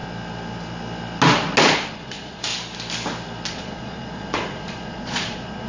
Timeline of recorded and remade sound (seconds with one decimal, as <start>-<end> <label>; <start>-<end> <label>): 0.0-1.6 recorded; 1.6-2.5 remade; 2.5-3.5 recorded; 3.5-5.7 remade